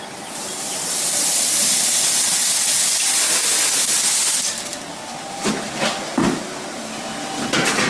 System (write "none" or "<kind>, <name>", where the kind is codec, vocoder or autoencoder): none